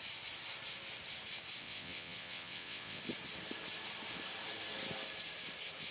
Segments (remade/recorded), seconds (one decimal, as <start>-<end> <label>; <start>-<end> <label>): 0.0-1.6 recorded; 1.6-3.0 remade; 3.0-5.9 recorded